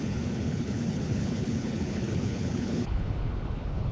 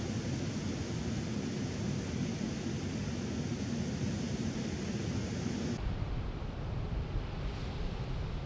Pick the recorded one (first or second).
second